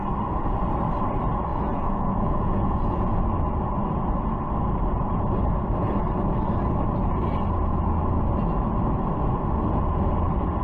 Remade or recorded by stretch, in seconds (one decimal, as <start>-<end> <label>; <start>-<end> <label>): 0.0-1.5 recorded; 1.5-3.2 remade; 3.2-10.6 recorded